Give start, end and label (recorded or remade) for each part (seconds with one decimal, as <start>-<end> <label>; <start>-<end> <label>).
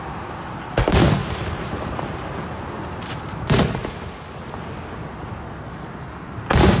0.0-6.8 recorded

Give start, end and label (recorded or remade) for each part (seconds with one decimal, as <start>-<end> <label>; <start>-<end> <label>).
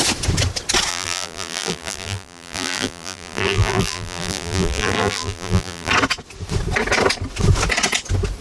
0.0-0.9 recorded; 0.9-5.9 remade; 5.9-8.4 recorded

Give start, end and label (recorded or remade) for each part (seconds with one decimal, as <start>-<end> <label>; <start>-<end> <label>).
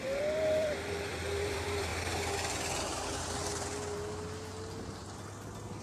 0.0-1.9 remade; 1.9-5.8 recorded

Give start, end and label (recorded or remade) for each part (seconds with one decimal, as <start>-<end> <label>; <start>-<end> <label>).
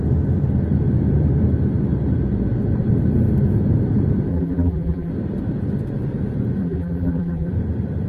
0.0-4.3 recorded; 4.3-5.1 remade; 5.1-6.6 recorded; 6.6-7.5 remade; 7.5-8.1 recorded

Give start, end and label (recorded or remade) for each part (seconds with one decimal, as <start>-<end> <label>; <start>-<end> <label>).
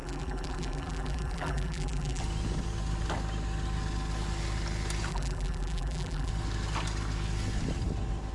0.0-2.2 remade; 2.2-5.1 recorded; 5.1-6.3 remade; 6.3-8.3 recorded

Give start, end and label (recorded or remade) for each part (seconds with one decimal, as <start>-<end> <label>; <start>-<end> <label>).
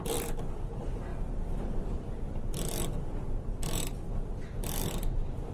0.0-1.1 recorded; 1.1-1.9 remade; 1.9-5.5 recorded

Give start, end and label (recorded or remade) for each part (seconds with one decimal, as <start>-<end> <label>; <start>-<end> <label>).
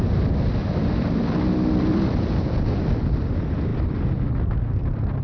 0.0-0.6 recorded; 0.6-2.6 remade; 2.6-5.2 recorded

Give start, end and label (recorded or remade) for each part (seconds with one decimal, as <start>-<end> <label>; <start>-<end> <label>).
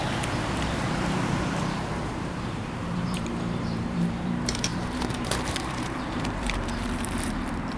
0.0-7.8 remade